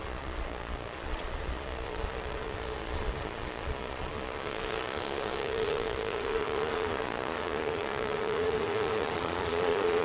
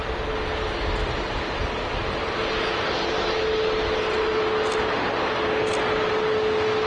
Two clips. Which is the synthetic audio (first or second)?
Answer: first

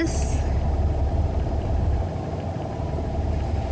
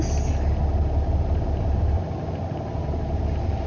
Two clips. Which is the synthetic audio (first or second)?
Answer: first